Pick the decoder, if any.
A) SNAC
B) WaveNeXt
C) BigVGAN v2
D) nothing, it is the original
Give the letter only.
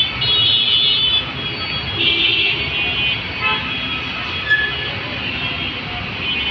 D